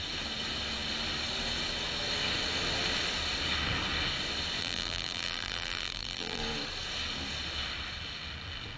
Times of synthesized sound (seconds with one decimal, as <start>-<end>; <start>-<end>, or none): 4.6-6.4